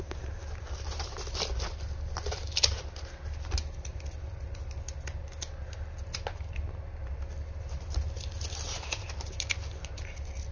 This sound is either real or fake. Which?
real